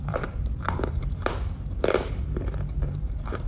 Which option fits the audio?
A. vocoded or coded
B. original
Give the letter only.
A